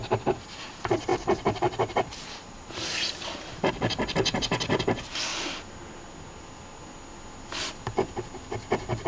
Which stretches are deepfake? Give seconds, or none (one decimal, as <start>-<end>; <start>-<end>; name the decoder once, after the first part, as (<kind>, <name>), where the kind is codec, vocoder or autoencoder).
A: 0.7-5.3 (vocoder, BigVGAN v2)